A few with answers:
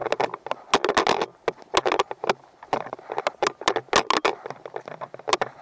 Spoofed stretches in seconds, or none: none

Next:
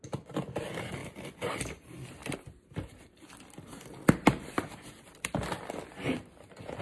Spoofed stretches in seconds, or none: none

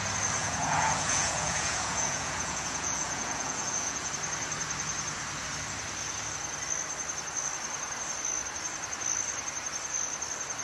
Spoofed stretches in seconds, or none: 0.4-4.1

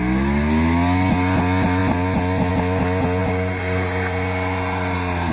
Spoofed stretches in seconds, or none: 3.2-5.3

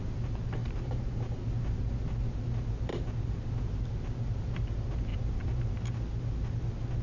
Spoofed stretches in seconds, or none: 0.6-1.4; 5.1-5.7

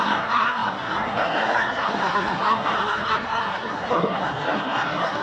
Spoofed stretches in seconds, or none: 0.0-5.2

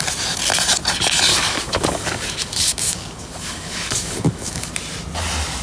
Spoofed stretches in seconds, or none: 1.3-4.7